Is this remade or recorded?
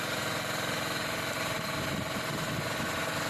remade